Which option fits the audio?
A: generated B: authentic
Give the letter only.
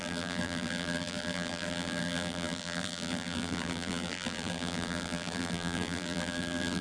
A